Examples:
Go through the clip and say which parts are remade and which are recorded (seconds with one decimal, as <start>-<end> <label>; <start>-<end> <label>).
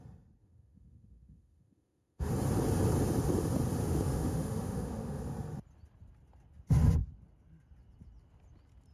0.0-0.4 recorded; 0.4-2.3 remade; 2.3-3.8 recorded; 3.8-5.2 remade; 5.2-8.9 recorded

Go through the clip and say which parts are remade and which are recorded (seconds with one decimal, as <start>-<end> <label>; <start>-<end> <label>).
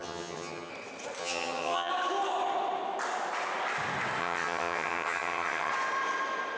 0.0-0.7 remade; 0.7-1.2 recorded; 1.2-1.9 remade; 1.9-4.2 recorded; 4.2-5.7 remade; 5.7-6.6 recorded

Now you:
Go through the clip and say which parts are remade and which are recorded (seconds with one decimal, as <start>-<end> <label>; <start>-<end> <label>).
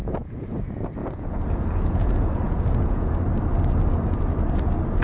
0.0-0.6 remade; 0.6-1.0 recorded; 1.0-3.1 remade; 3.1-5.0 recorded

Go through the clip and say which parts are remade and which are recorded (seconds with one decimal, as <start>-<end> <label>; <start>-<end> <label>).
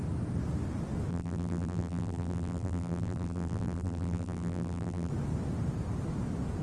0.0-1.1 recorded; 1.1-5.1 remade; 5.1-6.6 recorded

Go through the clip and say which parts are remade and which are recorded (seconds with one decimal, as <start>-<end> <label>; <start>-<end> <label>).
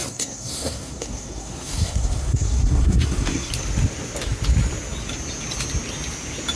0.0-3.5 remade; 3.5-6.6 recorded